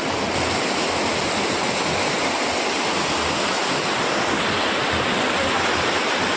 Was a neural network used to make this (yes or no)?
no